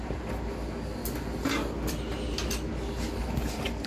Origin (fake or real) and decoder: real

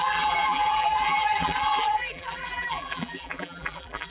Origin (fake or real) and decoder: fake, vocoder, BigVGAN v2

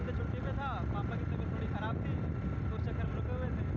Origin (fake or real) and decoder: real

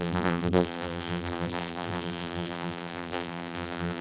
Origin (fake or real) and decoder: fake, vocoder, BigVGAN v2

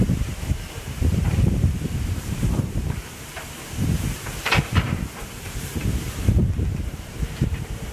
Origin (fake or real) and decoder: fake, vocoder, BigVGAN v2